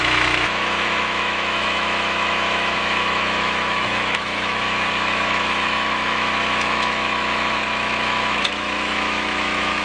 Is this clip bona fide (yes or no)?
no